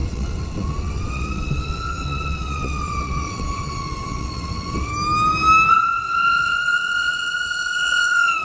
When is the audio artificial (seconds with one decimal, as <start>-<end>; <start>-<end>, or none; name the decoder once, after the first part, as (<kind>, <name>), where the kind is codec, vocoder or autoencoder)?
0.0-4.9 (vocoder, WaveNeXt); 5.7-8.4